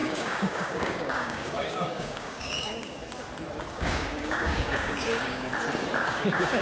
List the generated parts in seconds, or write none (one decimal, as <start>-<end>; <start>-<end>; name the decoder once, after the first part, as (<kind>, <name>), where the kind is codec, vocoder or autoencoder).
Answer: 0.0-3.0 (codec, DAC); 3.7-5.5; 6.0-6.6

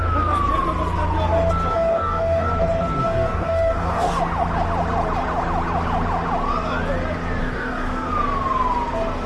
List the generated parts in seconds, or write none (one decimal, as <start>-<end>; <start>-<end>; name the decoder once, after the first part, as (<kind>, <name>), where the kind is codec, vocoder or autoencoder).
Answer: 1.7-2.5 (codec, DAC); 3.0-4.2; 7.4-8.1